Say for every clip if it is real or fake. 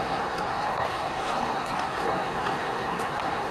fake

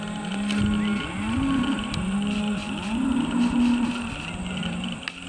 real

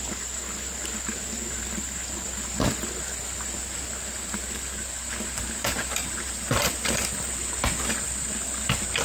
real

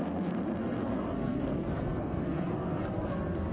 fake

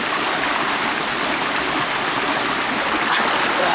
real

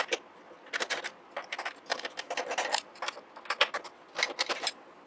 fake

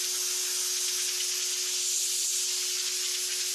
real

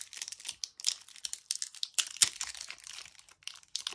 real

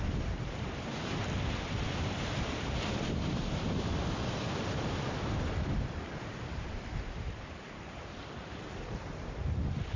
fake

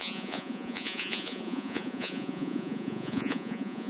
fake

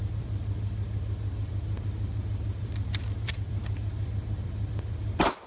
fake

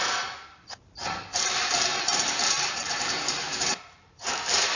fake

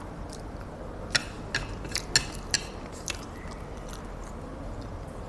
real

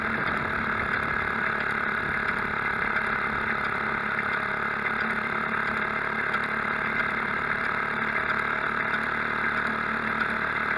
real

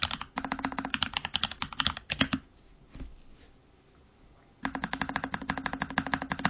real